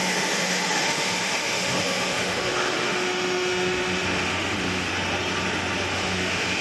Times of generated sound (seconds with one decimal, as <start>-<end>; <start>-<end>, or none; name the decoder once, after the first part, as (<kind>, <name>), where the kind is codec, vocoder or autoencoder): 0.0-4.9 (autoencoder, DAC-VAE); 5.9-6.6